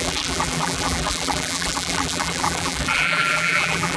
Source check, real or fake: fake